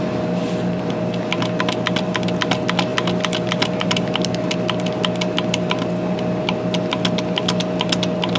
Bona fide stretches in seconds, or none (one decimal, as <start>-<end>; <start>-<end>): 0.0-8.4